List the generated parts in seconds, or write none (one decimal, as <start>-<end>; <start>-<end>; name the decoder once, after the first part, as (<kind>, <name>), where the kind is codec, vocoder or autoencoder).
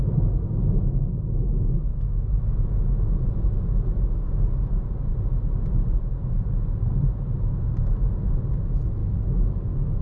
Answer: 1.9-2.8 (autoencoder, DAC-VAE); 9.0-10.0